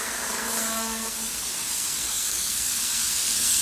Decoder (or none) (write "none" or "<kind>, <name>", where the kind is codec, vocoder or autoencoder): codec, SNAC